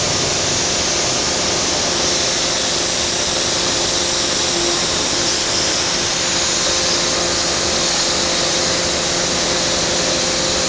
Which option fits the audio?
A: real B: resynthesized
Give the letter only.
A